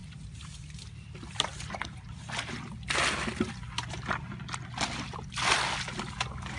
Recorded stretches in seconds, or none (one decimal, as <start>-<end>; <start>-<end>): 0.0-6.6

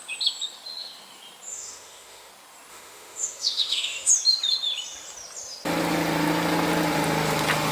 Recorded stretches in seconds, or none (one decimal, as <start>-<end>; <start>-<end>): 0.0-1.5; 2.3-2.7; 4.1-7.7